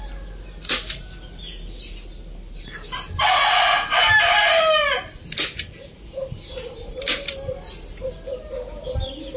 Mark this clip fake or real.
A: real